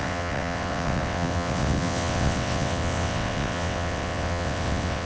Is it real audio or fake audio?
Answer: fake